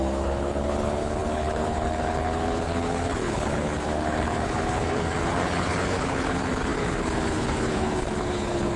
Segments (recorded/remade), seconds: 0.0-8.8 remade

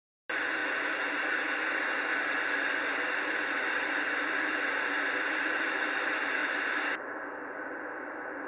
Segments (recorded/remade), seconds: 0.0-8.5 recorded

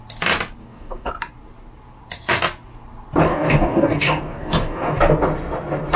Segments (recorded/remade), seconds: 0.0-0.6 recorded; 0.6-1.1 remade; 1.1-3.2 recorded; 3.2-5.0 remade; 5.0-6.0 recorded

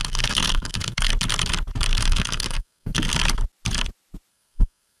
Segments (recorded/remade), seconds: 0.0-1.1 remade; 1.1-2.0 recorded; 2.0-3.1 remade; 3.1-4.3 recorded; 4.3-5.0 remade

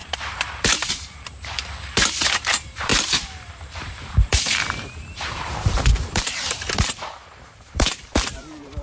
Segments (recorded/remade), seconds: 0.0-8.8 remade

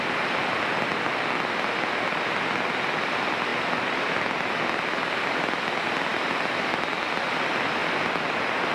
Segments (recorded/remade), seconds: 0.0-7.8 recorded; 7.8-8.7 remade